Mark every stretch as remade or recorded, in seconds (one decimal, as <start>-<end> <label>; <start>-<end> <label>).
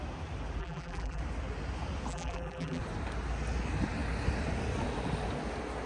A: 0.0-0.6 recorded; 0.6-1.2 remade; 1.2-2.1 recorded; 2.1-2.8 remade; 2.8-5.9 recorded